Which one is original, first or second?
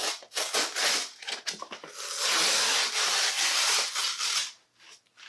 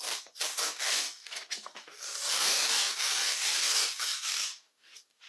first